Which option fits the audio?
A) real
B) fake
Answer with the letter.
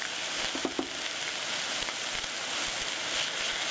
A